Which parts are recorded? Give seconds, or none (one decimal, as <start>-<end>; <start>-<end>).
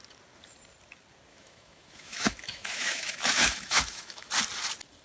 0.0-1.3; 4.3-5.0